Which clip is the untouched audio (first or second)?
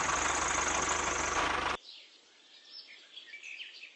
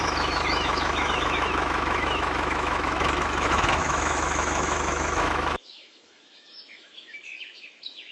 first